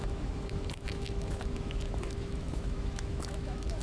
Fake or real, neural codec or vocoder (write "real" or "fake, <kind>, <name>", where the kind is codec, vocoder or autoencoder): fake, autoencoder, DAC-VAE